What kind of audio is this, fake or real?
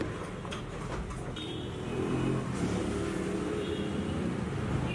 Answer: real